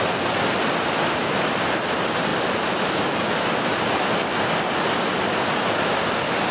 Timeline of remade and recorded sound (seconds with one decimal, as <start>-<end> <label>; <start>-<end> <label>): 0.0-6.5 recorded